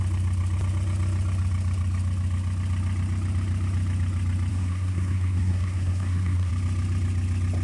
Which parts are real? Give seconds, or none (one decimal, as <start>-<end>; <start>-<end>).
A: 0.0-4.5; 6.5-7.6